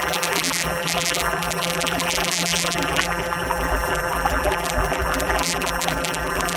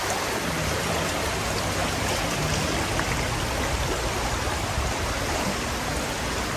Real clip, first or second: second